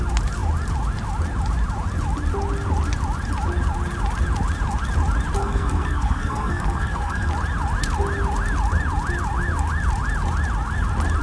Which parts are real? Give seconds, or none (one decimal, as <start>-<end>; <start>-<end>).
0.0-5.4; 7.3-11.2